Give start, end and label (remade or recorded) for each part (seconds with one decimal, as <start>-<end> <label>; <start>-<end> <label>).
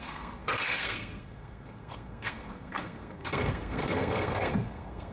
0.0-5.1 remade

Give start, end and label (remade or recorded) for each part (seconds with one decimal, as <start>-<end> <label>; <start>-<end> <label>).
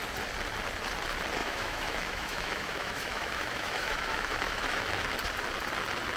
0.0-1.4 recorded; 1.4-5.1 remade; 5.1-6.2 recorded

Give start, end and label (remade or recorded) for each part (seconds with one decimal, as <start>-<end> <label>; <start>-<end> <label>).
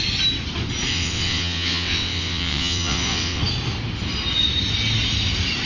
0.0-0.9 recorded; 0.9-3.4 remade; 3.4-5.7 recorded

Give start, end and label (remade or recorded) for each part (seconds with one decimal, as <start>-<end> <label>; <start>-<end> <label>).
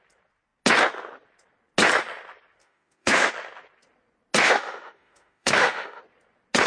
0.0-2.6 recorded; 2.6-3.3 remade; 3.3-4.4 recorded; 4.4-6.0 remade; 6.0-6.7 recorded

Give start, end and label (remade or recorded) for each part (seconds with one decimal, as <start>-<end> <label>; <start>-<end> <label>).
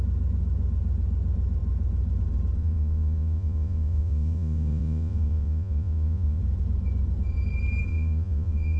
0.0-2.6 recorded; 2.6-6.4 remade; 6.4-7.9 recorded; 7.9-8.8 remade